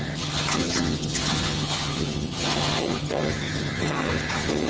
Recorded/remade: remade